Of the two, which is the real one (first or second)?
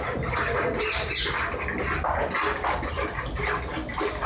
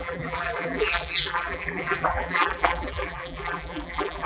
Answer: first